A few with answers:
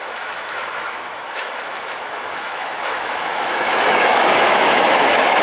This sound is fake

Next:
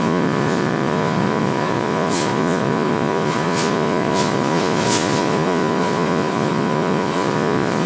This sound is fake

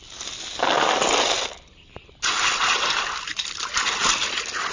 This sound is real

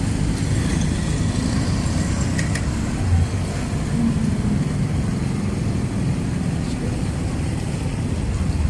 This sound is real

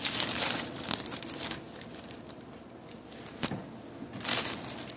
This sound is real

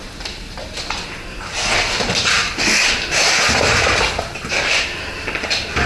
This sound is real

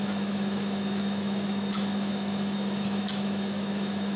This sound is fake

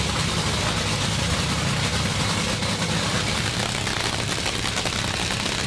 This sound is real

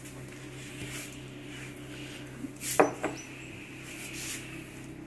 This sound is real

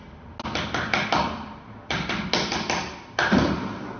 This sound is real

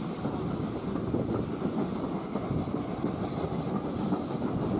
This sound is real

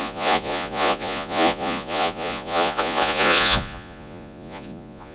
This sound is fake